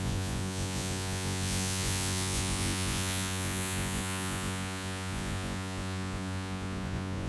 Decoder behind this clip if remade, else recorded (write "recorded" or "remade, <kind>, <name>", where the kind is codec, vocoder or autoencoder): remade, vocoder, Vocos